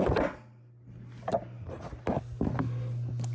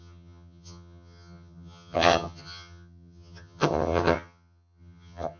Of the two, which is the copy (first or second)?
second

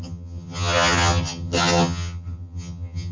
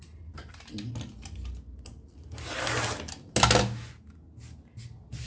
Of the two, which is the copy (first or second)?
first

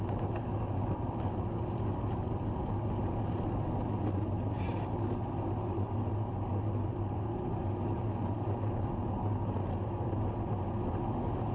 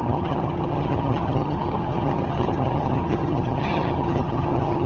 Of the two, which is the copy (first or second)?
second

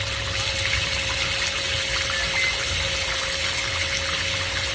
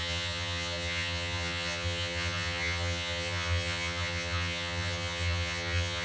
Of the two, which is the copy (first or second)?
second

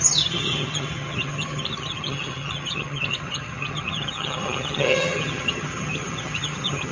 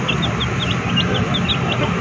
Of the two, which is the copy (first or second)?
first